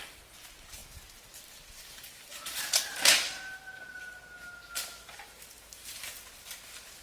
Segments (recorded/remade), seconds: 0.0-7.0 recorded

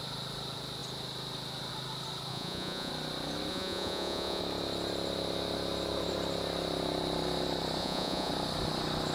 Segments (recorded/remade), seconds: 0.0-2.3 recorded; 2.3-2.9 remade; 2.9-3.5 recorded; 3.5-4.4 remade; 4.4-7.8 recorded; 7.8-8.3 remade; 8.3-9.1 recorded

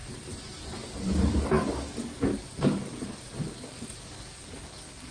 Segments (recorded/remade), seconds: 0.0-0.6 recorded; 0.6-2.3 remade; 2.3-3.6 recorded; 3.6-5.1 remade

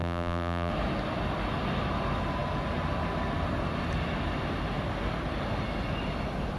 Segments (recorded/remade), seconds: 0.0-0.7 remade; 0.7-6.6 recorded

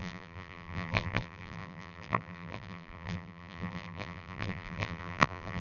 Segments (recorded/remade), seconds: 0.0-5.6 remade

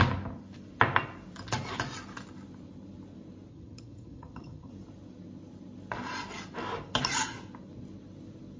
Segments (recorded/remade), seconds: 0.0-3.5 recorded; 3.5-4.7 remade; 4.7-8.6 recorded

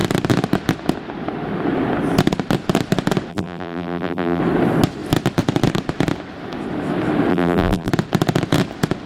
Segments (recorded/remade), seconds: 0.0-3.3 recorded; 3.3-4.4 remade; 4.4-7.3 recorded; 7.3-7.9 remade; 7.9-9.1 recorded

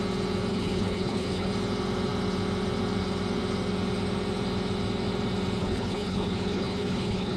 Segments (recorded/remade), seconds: 0.0-0.5 recorded; 0.5-1.5 remade; 1.5-5.6 recorded; 5.6-7.4 remade